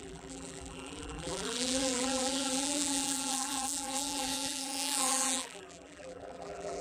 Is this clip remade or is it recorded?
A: remade